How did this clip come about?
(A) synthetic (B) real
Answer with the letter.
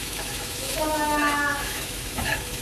A